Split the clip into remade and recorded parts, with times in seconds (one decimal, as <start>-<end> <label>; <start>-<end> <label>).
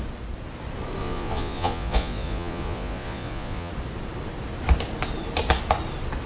0.0-1.0 recorded; 1.0-3.7 remade; 3.7-6.3 recorded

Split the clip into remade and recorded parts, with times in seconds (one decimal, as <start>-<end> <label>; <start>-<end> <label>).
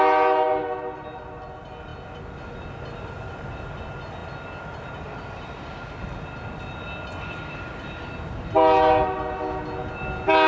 0.0-10.5 recorded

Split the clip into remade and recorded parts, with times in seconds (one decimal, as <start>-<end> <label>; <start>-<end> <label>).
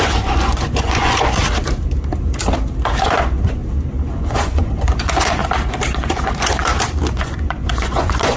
0.0-1.4 remade; 1.4-3.0 recorded; 3.0-3.6 remade; 3.6-4.1 recorded; 4.1-5.4 remade; 5.4-5.9 recorded; 5.9-6.6 remade; 6.6-7.1 recorded; 7.1-8.4 remade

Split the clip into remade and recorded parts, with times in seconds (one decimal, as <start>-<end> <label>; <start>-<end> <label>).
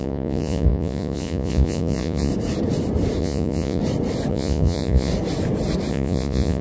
0.0-2.3 remade; 2.3-3.2 recorded; 3.2-3.8 remade; 3.8-4.3 recorded; 4.3-5.1 remade; 5.1-5.9 recorded; 5.9-6.6 remade